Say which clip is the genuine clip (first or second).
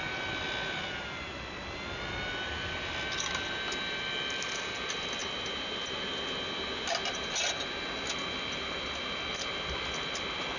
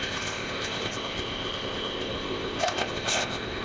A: first